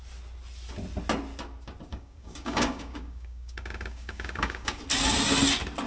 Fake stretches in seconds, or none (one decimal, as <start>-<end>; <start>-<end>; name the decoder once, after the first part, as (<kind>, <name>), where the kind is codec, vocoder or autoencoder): 1.9-4.8 (codec, DAC)